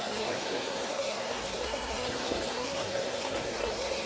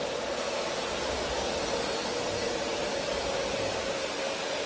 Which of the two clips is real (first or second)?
second